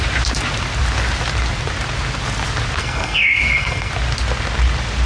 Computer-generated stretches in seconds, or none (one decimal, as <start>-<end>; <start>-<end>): 2.8-3.9